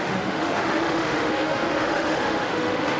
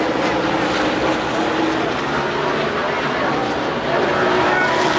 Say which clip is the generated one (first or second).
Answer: first